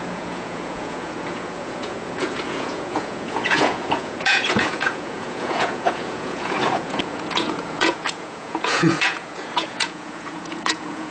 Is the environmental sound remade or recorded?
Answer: remade